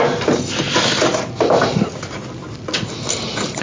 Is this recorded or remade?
recorded